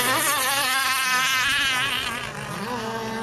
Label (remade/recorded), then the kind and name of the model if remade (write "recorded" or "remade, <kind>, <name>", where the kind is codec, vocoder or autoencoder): recorded